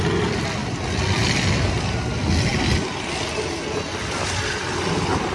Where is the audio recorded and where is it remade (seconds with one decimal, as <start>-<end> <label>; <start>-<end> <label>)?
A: 0.0-5.3 recorded